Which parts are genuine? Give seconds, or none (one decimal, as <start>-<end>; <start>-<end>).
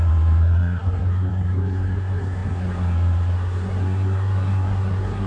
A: none